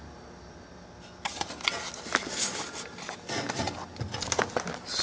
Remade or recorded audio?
recorded